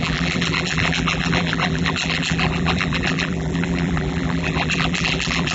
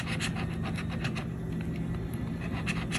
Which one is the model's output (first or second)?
first